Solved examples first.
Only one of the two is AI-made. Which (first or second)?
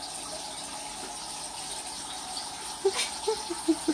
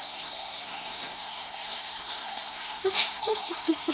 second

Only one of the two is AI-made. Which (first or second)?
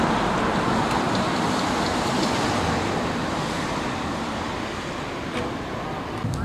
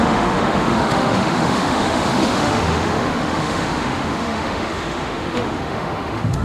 second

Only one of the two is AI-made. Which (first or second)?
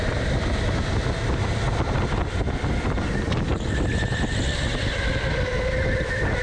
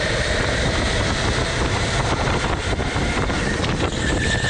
second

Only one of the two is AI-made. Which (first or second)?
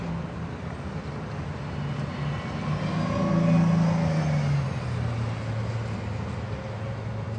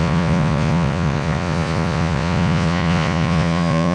second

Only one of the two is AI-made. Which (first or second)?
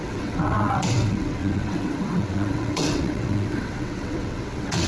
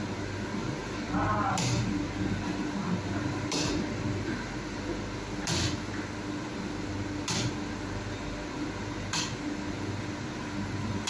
first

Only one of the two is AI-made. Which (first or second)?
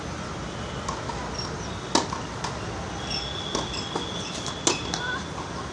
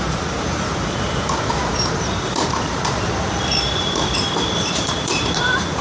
second